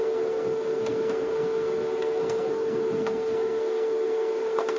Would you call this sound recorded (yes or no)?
no